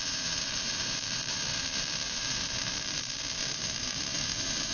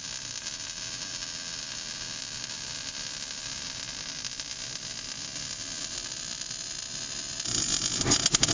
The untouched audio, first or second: second